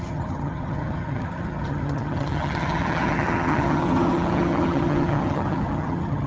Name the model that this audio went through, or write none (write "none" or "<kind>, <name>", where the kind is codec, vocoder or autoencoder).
vocoder, HiFi-GAN